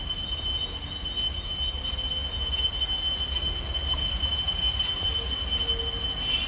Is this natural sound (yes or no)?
yes